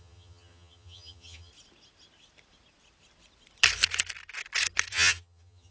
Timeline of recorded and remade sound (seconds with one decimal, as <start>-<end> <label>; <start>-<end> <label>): 0.0-1.5 remade; 1.5-4.9 recorded; 4.9-5.7 remade